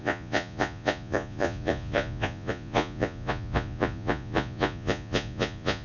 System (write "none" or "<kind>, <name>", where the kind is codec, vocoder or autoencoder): vocoder, Vocos